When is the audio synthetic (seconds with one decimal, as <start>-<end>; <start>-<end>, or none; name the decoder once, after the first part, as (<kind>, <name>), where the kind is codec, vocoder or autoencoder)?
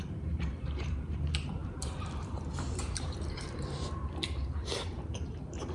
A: 0.0-5.7 (vocoder, BigVGAN v2)